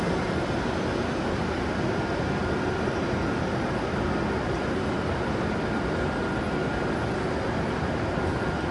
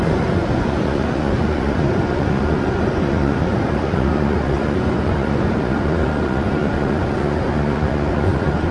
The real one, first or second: first